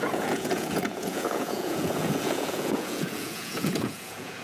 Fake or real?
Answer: fake